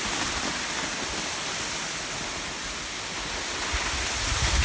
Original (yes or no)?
yes